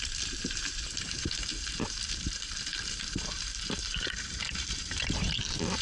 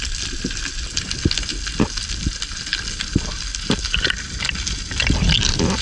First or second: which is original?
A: second